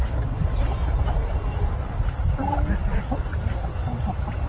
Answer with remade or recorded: recorded